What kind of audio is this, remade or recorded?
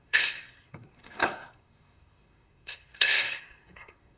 remade